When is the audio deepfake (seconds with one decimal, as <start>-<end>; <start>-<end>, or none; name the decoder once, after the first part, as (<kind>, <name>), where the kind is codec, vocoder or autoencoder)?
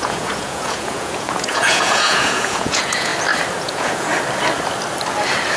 0.0-3.1 (vocoder, Vocos); 3.6-4.1